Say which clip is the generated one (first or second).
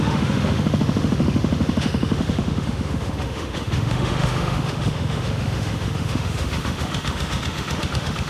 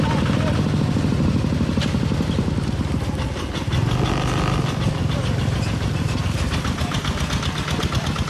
first